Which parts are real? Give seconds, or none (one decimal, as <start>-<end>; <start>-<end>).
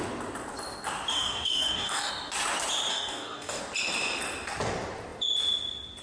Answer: 0.0-1.1; 2.1-2.9; 3.6-6.0